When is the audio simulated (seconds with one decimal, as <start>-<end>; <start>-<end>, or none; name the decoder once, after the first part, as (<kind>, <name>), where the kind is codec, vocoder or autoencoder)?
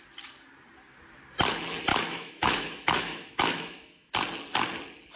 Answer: 1.9-4.1 (autoencoder, DAC-VAE)